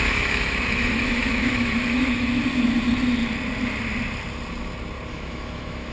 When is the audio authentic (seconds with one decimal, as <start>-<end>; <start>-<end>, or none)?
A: 2.4-5.1